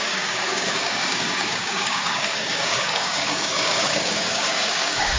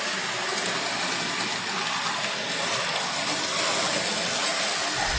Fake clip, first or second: first